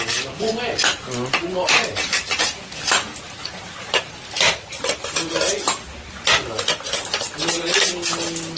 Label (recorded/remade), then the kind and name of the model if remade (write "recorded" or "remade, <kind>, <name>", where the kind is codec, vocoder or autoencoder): recorded